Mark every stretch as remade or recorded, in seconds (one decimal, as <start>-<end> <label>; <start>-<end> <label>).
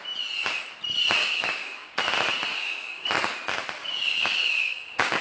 0.0-1.2 recorded; 1.2-2.0 remade; 2.0-2.5 recorded; 2.5-3.1 remade; 3.1-3.8 recorded; 3.8-5.2 remade